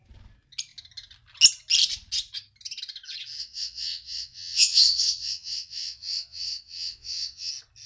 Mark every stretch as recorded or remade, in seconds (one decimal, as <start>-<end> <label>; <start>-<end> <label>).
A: 0.0-3.4 recorded; 3.4-7.5 remade; 7.5-7.9 recorded